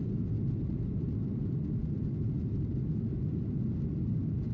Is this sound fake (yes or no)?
no